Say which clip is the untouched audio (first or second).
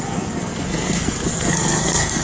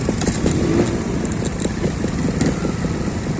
second